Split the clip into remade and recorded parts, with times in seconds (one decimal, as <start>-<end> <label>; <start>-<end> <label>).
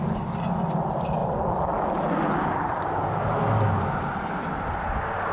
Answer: 0.0-5.3 recorded